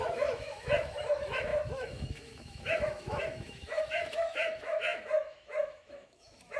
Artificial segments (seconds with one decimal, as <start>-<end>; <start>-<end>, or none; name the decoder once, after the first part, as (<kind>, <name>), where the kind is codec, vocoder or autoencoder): 0.0-6.6 (autoencoder, DAC-VAE)